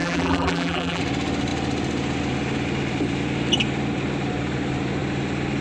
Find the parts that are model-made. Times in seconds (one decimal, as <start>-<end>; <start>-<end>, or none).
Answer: 0.0-1.0